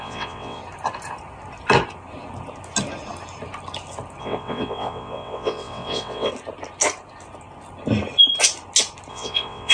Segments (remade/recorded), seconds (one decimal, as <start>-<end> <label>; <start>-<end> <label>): 0.0-0.6 remade; 0.6-4.2 recorded; 4.2-6.3 remade; 6.3-9.1 recorded; 9.1-9.7 remade

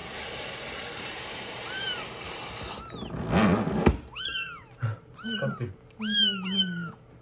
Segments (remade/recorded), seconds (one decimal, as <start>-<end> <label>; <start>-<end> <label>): 0.0-2.6 remade; 2.6-7.2 recorded

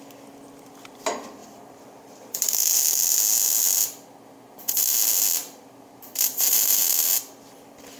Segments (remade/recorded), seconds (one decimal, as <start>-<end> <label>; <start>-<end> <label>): 0.0-1.4 recorded; 1.4-3.2 remade; 3.2-5.4 recorded; 5.4-6.8 remade; 6.8-8.0 recorded